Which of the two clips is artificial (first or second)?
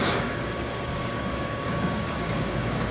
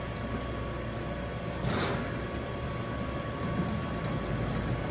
first